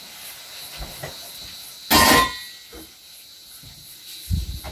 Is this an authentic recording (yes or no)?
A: yes